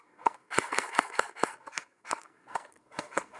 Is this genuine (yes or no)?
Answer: no